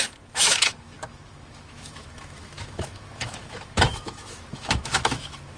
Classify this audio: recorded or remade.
remade